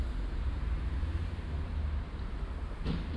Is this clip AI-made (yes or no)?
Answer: no